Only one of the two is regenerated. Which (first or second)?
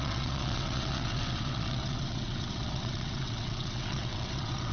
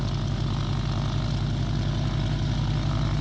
first